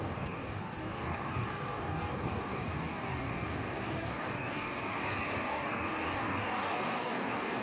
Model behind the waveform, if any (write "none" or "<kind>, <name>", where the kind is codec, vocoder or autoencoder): codec, DAC